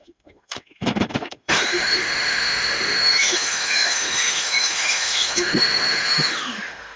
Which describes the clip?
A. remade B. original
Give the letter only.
A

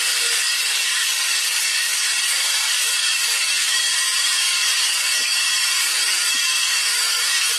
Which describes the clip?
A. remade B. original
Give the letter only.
A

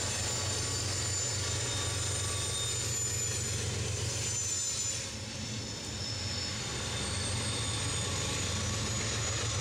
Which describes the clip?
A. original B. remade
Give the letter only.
A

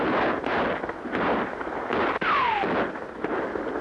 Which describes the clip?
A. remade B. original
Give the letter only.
B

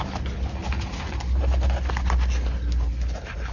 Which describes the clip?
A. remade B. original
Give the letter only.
B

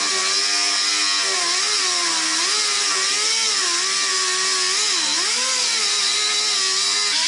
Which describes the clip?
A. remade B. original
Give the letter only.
B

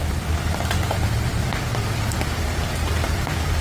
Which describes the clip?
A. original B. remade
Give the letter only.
B